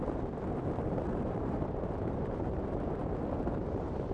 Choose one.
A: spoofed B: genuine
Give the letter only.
A